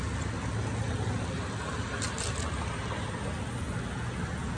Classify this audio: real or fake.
real